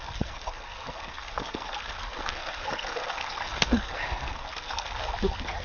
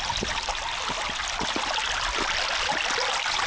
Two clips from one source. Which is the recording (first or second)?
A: second